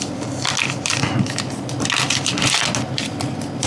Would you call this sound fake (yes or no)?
no